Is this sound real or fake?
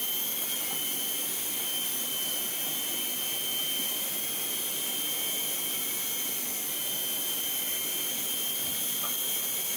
real